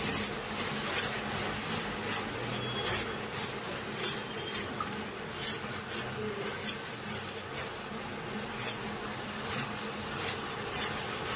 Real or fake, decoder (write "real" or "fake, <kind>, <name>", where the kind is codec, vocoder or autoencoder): real